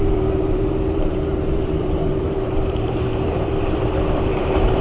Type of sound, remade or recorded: remade